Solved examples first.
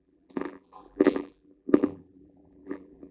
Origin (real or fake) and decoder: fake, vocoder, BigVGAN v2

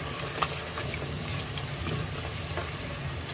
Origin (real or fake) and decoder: real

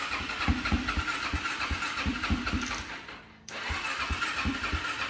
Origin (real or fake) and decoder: fake, vocoder, BigVGAN v2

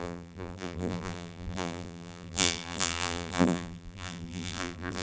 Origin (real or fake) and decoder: fake, vocoder, BigVGAN v2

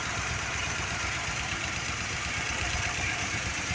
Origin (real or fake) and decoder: fake, vocoder, BigVGAN v2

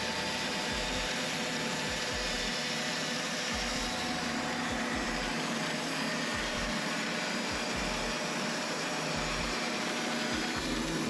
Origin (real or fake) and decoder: fake, vocoder, BigVGAN v2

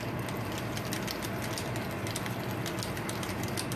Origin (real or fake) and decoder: real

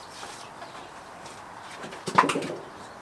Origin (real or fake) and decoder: fake, vocoder, BigVGAN v2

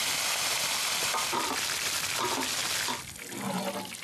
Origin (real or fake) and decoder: real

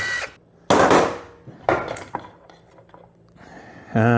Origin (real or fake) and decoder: fake, vocoder, BigVGAN v2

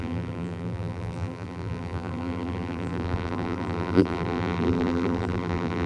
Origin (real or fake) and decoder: fake, vocoder, BigVGAN v2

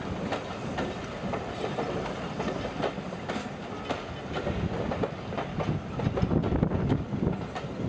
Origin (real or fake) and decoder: real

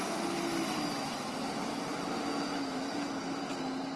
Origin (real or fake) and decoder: real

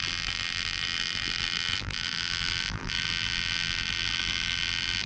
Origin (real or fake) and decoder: fake, vocoder, BigVGAN v2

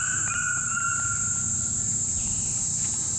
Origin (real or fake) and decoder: fake, vocoder, BigVGAN v2